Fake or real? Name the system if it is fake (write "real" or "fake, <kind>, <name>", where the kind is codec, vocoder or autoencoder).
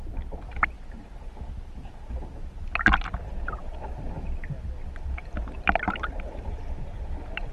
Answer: real